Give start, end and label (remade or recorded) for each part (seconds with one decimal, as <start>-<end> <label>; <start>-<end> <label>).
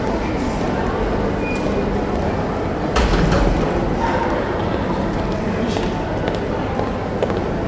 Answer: 0.0-7.7 recorded